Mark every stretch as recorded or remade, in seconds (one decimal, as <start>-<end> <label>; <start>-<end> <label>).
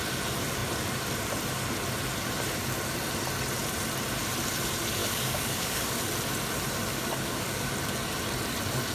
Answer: 0.0-5.0 recorded; 5.0-6.0 remade; 6.0-6.9 recorded; 6.9-7.7 remade; 7.7-8.9 recorded